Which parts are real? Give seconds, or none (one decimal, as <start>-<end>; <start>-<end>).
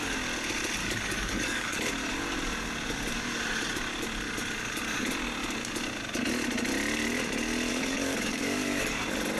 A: 0.0-0.8; 1.8-7.7; 9.0-9.4